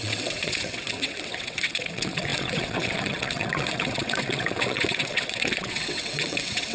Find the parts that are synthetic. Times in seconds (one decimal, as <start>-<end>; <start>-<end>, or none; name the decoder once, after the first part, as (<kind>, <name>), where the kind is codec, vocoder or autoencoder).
0.0-6.7 (vocoder, WaveNeXt)